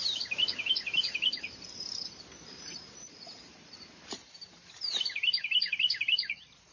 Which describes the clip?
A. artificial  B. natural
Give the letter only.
A